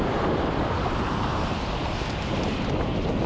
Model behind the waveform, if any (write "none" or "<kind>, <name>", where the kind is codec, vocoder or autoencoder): none